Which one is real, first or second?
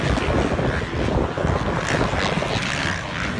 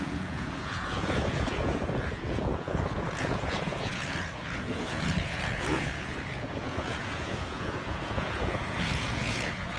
first